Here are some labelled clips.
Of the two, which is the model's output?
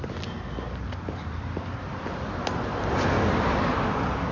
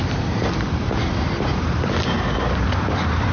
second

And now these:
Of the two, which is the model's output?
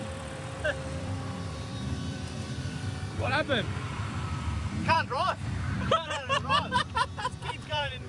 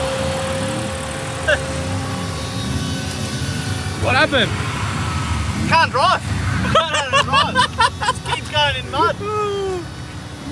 first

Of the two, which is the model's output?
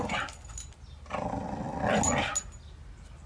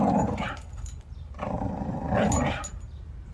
second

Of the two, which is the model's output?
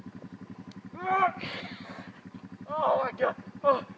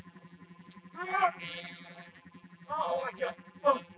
second